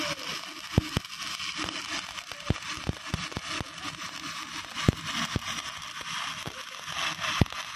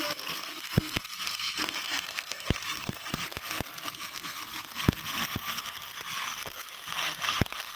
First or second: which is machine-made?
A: second